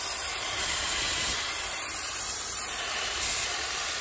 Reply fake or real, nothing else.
fake